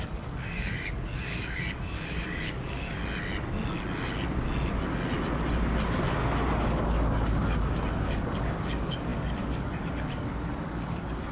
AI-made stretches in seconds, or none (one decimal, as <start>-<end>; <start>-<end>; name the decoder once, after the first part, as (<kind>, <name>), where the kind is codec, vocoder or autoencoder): 0.0-3.0 (codec, DAC); 6.6-11.3